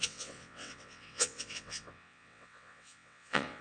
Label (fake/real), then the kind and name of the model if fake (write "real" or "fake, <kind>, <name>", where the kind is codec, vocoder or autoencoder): fake, vocoder, WaveNeXt